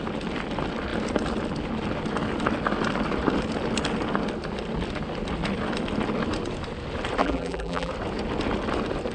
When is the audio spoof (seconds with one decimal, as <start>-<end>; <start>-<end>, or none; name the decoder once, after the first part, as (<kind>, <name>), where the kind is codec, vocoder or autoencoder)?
7.2-7.9 (vocoder, BigVGAN v2)